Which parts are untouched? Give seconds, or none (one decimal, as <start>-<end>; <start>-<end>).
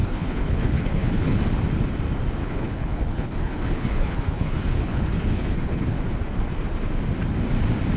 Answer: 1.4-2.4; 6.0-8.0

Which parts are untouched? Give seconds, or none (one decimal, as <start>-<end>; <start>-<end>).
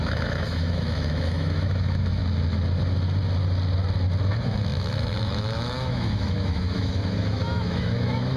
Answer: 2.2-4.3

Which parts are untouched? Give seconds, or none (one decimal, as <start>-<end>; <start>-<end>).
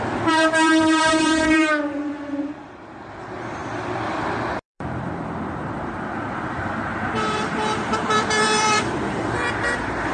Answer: none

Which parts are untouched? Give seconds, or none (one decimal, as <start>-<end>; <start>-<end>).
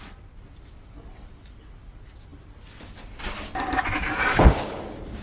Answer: 0.0-4.3; 4.8-5.2